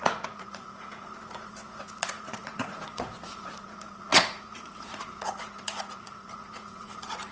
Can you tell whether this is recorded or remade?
remade